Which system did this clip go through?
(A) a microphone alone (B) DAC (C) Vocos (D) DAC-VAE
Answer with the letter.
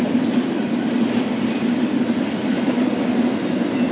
A